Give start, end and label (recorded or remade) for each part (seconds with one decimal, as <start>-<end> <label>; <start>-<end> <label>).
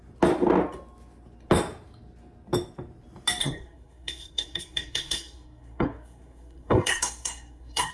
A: 0.0-3.4 recorded; 3.4-7.9 remade